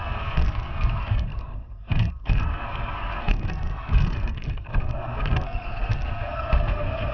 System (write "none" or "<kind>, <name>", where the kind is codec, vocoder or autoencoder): codec, SNAC